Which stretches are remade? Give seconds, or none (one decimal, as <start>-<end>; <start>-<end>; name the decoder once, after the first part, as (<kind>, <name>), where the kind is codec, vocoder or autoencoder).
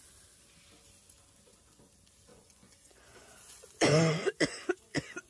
2.3-5.3 (vocoder, Vocos)